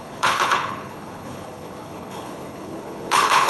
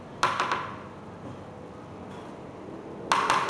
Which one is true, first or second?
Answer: second